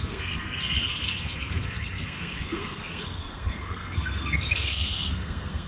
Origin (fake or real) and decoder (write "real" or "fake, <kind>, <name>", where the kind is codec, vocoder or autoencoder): fake, codec, SNAC